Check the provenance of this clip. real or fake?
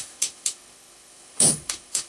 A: fake